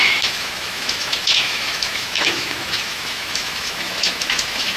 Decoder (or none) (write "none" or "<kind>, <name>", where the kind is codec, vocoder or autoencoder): autoencoder, DAC-VAE